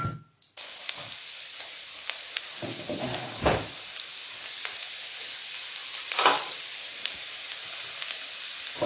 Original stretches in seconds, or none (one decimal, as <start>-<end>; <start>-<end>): 0.0-8.9